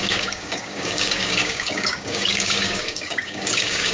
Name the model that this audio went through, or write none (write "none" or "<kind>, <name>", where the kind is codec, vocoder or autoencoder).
codec, DAC